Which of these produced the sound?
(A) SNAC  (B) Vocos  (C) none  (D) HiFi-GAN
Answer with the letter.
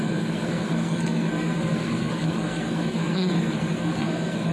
A